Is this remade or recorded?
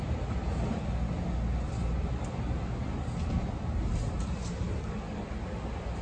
recorded